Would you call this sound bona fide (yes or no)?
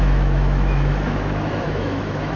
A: no